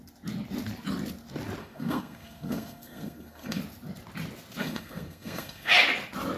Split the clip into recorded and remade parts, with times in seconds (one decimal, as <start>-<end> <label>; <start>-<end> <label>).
0.0-1.6 recorded; 1.6-3.6 remade; 3.6-4.6 recorded; 4.6-5.7 remade; 5.7-6.4 recorded